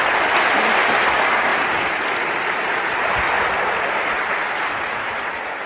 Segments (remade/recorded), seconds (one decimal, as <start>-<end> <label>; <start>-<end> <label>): 0.0-5.7 recorded